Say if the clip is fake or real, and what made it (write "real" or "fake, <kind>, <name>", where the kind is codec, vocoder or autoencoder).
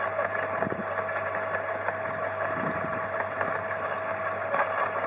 real